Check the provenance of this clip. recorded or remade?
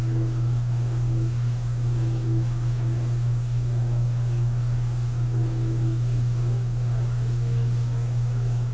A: remade